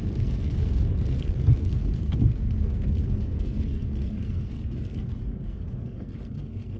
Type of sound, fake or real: fake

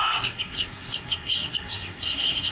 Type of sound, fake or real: fake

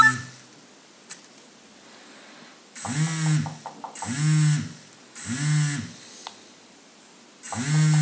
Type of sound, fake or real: real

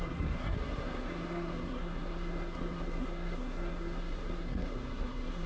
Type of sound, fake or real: fake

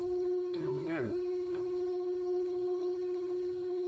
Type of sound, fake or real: fake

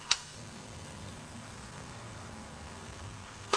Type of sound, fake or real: fake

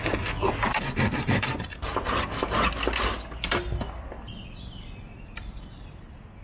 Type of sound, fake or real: real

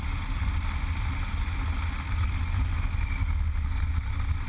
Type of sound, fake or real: real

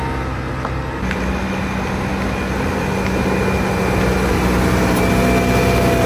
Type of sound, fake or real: real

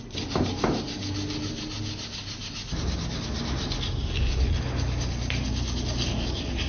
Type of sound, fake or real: real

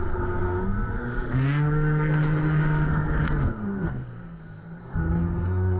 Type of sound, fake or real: fake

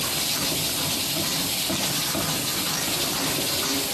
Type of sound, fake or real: real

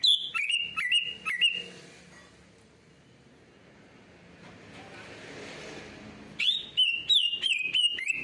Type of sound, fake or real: real